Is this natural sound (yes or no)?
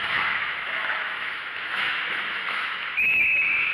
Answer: no